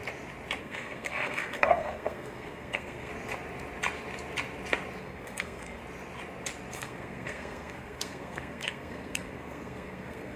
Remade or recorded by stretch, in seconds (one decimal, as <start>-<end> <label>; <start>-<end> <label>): 0.0-0.6 recorded; 0.6-3.1 remade; 3.1-5.0 recorded; 5.0-5.8 remade; 5.8-6.7 recorded; 6.7-10.4 remade